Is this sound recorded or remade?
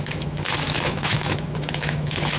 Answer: remade